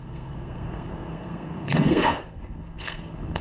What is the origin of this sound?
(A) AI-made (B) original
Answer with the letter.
A